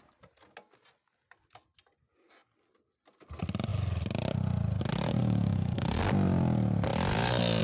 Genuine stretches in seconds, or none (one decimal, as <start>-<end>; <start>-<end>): 0.0-5.2; 6.0-7.6